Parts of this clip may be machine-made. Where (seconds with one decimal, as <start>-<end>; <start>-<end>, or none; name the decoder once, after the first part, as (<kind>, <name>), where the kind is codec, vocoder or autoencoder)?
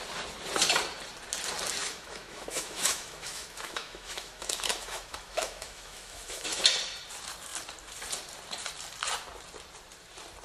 1.8-6.6 (autoencoder, DAC-VAE)